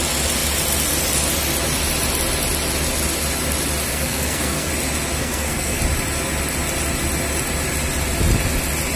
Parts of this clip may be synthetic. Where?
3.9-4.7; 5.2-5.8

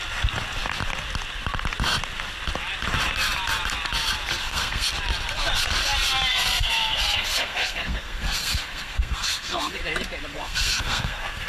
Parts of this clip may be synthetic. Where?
4.4-4.9; 6.3-9.8; 10.3-11.5

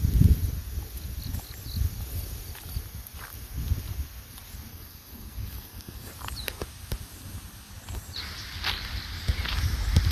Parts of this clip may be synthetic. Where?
4.7-6.1

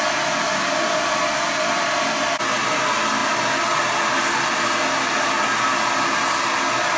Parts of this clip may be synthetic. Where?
none

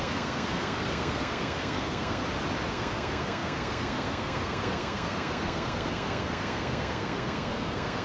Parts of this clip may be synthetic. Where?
0.0-2.2; 2.7-8.0

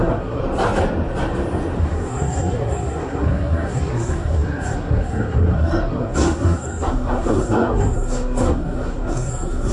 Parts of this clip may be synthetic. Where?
0.0-0.4; 1.8-9.7

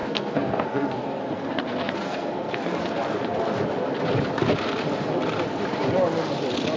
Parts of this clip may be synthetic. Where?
0.0-2.8